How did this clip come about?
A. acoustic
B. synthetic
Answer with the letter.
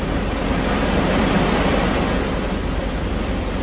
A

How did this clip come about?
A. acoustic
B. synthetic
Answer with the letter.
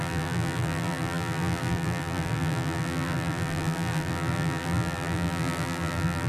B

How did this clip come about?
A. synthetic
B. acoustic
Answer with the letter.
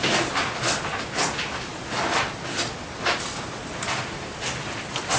B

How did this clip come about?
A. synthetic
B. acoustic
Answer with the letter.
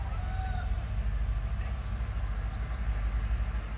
B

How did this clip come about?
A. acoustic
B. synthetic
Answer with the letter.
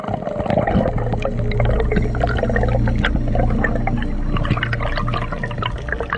A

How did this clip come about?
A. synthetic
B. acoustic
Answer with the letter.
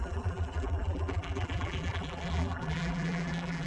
A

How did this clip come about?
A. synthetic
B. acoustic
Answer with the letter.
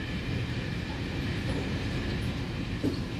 A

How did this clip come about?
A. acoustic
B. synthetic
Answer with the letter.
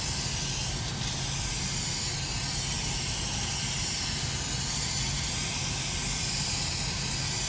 A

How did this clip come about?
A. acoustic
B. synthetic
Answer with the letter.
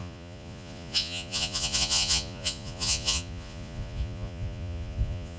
B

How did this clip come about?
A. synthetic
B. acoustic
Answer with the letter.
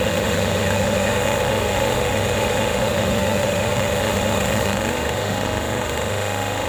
A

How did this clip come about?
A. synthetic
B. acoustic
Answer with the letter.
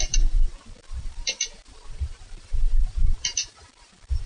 A